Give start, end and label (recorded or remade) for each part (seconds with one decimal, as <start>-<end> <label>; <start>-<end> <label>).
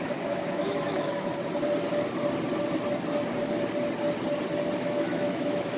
0.0-1.3 remade; 1.3-4.8 recorded; 4.8-5.8 remade